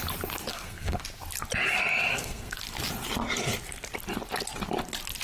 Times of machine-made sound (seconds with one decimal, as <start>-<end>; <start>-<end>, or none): 0.5-1.0; 2.1-2.6

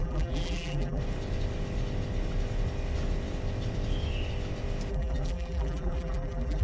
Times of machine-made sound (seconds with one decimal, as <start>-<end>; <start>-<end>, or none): 0.0-1.0; 4.9-6.6

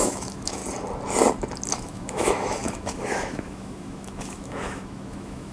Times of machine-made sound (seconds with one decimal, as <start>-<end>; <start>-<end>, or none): 0.0-0.6; 1.7-5.5